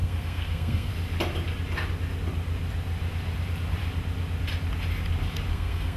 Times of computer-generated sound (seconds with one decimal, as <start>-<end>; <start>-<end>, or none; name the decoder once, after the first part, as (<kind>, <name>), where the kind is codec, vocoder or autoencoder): 0.0-0.9 (codec, SNAC); 5.5-6.0

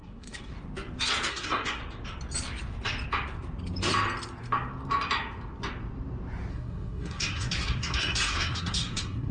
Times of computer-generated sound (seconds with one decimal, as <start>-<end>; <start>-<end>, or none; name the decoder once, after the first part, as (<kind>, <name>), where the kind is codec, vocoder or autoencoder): 0.0-0.5 (codec, SNAC); 1.3-1.8; 6.5-9.3

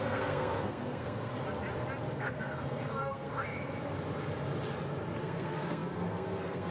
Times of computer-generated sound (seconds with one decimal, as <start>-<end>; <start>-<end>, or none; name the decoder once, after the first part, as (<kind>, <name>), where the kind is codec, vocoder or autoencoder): 0.0-1.3 (codec, SNAC); 2.2-3.5; 5.2-6.7

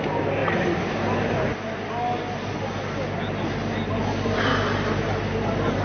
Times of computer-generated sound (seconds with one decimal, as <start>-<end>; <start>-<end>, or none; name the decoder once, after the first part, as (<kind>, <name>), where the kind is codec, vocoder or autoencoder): none

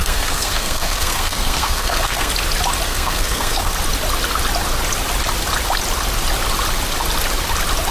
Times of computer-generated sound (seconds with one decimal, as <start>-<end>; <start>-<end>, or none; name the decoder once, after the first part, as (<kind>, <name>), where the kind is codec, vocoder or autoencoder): 0.0-2.3 (codec, SNAC); 2.9-3.7